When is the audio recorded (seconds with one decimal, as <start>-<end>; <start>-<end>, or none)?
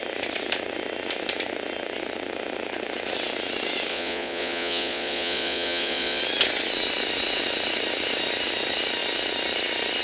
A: 0.0-3.9; 6.2-10.0